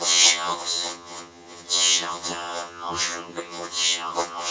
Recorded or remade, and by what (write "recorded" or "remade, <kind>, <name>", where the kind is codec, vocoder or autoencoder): remade, vocoder, HiFi-GAN